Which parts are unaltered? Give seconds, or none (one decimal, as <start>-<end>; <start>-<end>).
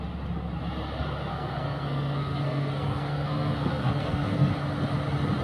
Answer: 0.0-1.3; 4.5-5.4